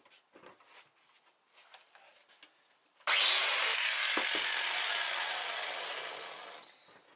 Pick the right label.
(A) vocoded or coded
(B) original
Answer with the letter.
B